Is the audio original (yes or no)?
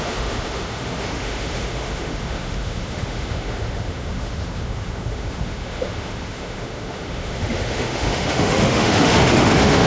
no